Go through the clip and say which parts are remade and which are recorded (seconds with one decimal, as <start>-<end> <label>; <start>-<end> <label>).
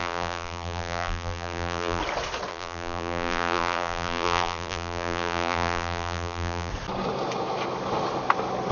0.0-2.0 remade; 2.0-2.5 recorded; 2.5-6.7 remade; 6.7-8.7 recorded